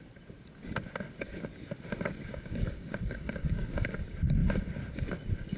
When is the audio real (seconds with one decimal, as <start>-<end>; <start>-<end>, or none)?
0.0-2.3; 3.9-5.6